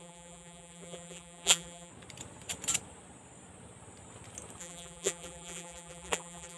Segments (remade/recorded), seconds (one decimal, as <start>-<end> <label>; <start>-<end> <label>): 0.0-1.9 remade; 1.9-4.6 recorded; 4.6-6.6 remade